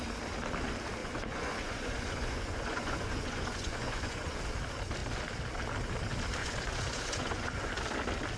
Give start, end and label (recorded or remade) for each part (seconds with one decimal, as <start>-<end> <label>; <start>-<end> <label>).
0.0-1.0 recorded; 1.0-4.4 remade; 4.4-6.4 recorded; 6.4-7.7 remade; 7.7-8.4 recorded

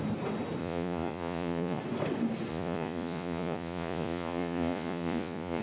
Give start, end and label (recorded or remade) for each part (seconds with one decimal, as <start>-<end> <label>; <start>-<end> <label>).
0.0-0.6 recorded; 0.6-1.8 remade; 1.8-2.5 recorded; 2.5-5.6 remade

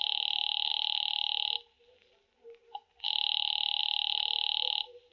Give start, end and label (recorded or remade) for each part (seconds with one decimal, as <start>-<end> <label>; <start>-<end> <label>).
0.0-5.1 recorded

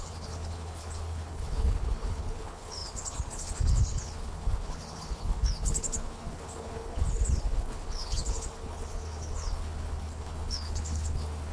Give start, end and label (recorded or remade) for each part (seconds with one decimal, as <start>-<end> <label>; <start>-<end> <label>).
0.0-11.5 remade

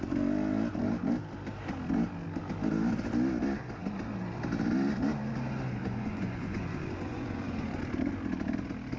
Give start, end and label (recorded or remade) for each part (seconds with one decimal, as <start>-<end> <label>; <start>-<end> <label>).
0.0-5.8 recorded; 5.8-7.8 remade; 7.8-9.0 recorded